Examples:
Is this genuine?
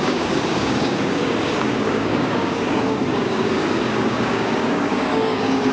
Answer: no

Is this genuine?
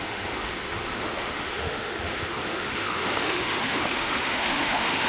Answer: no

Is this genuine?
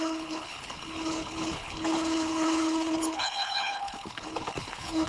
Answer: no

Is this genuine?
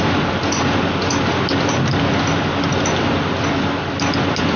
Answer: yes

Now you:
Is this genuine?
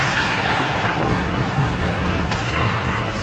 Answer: no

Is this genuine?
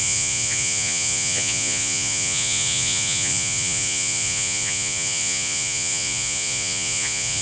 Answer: no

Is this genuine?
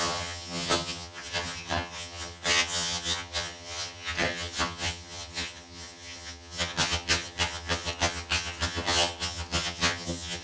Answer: no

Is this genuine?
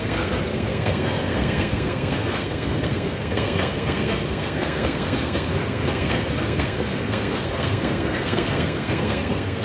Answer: no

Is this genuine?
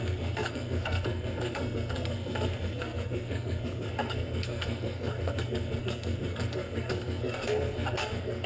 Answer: no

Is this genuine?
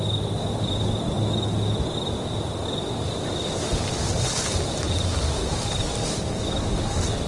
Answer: yes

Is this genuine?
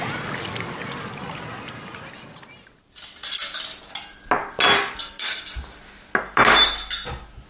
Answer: yes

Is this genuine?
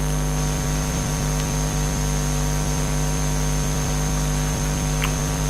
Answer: no